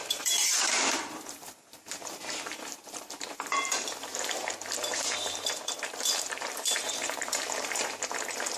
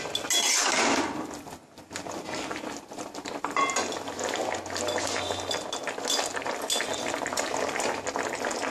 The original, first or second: second